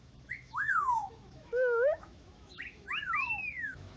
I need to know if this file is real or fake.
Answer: fake